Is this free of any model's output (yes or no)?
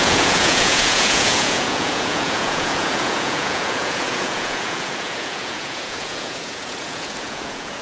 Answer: no